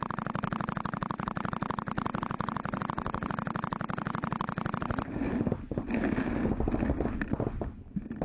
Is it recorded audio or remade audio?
recorded